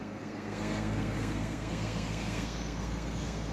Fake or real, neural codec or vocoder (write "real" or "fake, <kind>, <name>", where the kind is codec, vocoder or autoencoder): fake, codec, SNAC